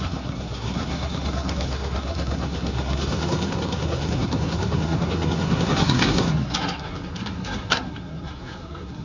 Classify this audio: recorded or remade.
remade